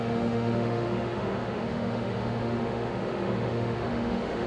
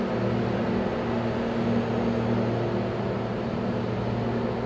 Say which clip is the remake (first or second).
first